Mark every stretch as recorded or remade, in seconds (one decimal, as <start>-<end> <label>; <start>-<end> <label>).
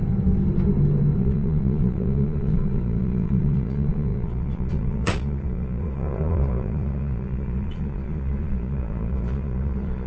0.0-1.2 recorded; 1.2-10.1 remade